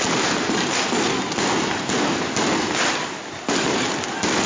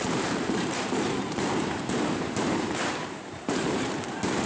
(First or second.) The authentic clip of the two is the first